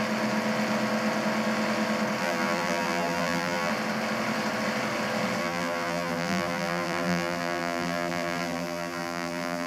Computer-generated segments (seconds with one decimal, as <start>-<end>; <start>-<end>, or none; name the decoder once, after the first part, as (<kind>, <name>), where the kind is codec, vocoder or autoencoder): 2.2-3.7 (vocoder, BigVGAN v2); 5.4-9.7